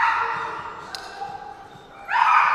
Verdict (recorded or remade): recorded